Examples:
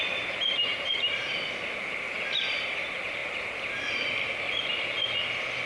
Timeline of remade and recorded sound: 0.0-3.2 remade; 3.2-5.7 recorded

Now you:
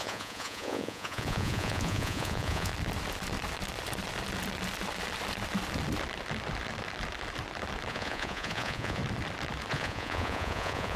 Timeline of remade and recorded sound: 0.0-2.7 remade; 2.7-7.9 recorded; 7.9-9.0 remade; 9.0-9.7 recorded; 9.7-11.0 remade

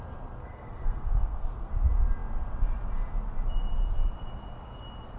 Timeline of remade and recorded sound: 0.0-0.4 recorded; 0.4-1.7 remade; 1.7-5.2 recorded

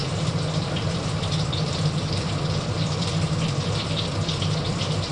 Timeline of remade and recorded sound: 0.0-5.1 remade